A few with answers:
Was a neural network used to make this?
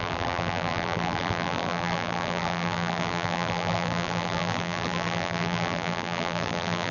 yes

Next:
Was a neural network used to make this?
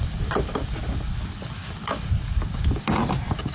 no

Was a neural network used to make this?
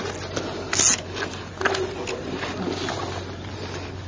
no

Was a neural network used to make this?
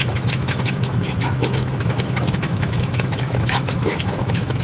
yes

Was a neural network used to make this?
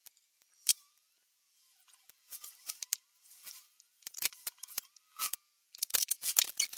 yes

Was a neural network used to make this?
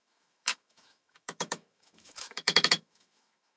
yes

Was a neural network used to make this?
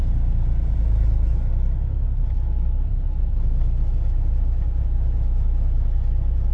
no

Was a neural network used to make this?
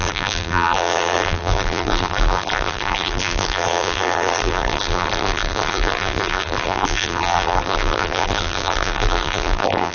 yes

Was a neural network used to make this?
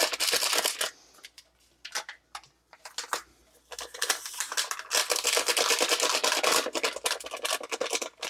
no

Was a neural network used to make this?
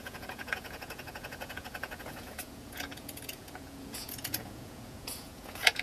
yes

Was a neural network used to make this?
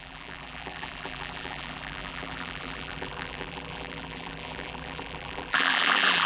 yes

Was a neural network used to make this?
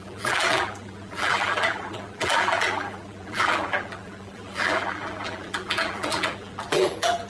yes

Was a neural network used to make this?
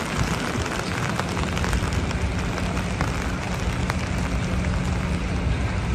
no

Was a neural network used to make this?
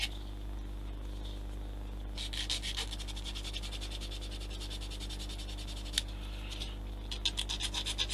no